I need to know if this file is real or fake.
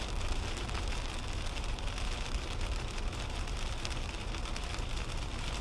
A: real